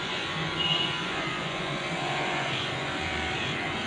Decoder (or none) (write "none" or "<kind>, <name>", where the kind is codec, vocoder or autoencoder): vocoder, Vocos